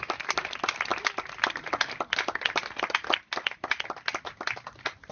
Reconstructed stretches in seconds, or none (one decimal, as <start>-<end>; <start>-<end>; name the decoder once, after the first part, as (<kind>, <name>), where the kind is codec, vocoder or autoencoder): none